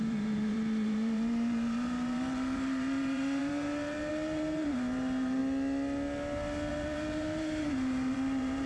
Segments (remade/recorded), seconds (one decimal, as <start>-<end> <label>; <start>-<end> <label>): 0.0-5.4 remade; 5.4-6.7 recorded; 6.7-8.7 remade